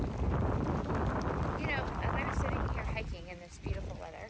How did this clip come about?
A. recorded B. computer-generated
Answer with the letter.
A